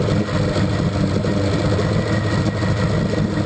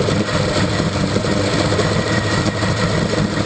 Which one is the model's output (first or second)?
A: second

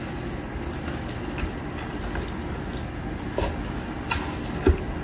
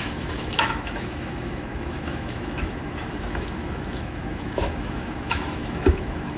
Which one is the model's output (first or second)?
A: second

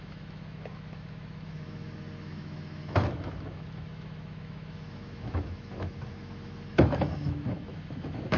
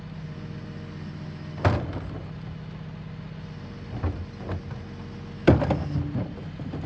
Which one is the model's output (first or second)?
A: first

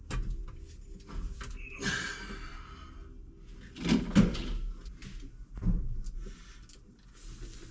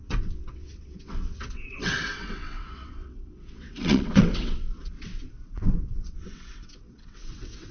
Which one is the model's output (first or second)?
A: second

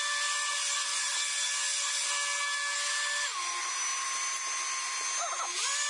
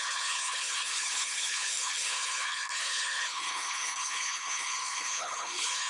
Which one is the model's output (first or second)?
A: second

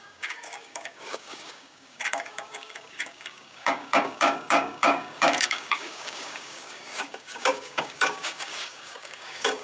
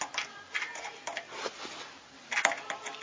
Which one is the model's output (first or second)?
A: first